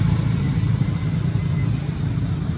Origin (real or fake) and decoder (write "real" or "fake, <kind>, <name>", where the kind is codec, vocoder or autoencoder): real